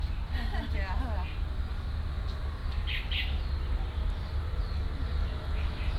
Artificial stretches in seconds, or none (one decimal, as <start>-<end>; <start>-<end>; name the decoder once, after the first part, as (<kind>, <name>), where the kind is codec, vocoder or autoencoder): 1.7-2.2 (vocoder, BigVGAN v2); 2.6-4.6